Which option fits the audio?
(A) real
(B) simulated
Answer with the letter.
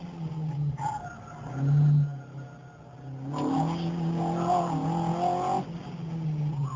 A